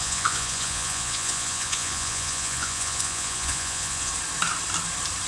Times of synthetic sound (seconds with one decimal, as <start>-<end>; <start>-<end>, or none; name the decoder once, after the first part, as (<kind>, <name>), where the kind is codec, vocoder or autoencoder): 0.0-4.1 (vocoder, Vocos)